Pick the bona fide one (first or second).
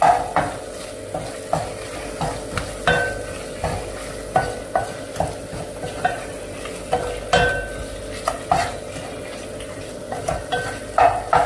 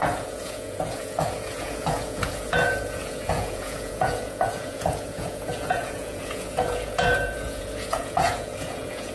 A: first